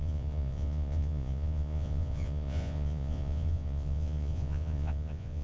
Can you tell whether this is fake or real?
fake